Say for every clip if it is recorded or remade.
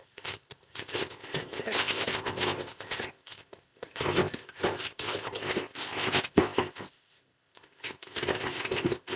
remade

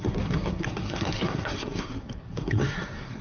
remade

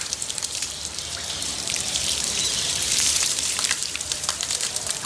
remade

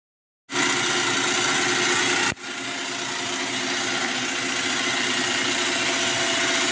recorded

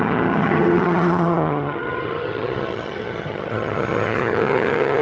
remade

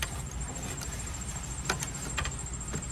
recorded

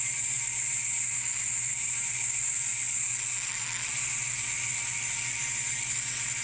recorded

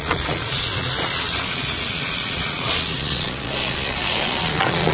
remade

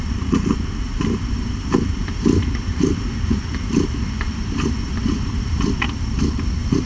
remade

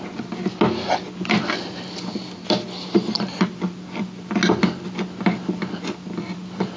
recorded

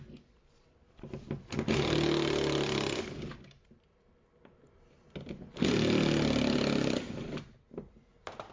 recorded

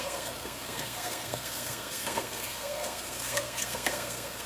remade